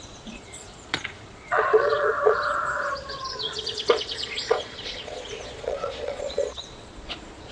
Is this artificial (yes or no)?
yes